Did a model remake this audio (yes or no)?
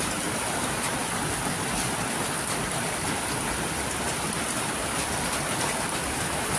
yes